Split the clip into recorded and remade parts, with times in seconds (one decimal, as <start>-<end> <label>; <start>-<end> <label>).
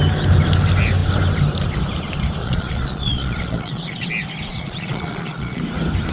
0.0-2.4 recorded; 2.4-4.1 remade; 4.1-4.5 recorded; 4.5-5.6 remade; 5.6-6.1 recorded